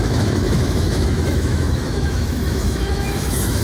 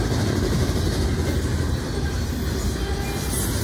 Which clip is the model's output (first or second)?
first